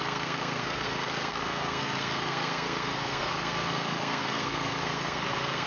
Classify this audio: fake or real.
fake